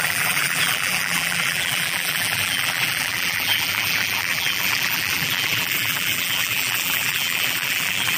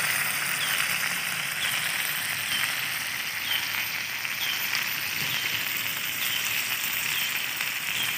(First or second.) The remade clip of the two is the first